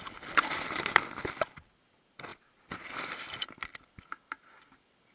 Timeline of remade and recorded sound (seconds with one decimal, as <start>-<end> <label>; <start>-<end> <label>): 0.0-5.1 recorded